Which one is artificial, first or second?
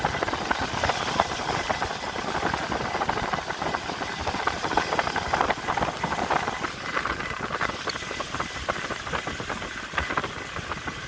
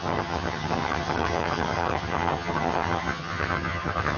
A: second